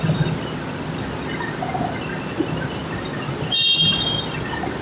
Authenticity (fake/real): real